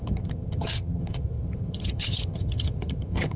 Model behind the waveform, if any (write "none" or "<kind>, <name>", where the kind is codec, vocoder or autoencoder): vocoder, HiFi-GAN